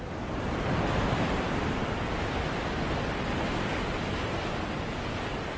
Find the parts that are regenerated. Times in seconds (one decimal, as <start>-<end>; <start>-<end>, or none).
none